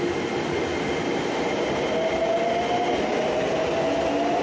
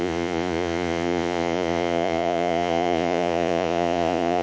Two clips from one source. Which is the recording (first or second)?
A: first